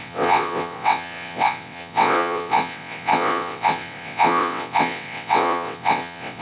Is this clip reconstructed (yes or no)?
yes